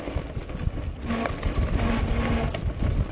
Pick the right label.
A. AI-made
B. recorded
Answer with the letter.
B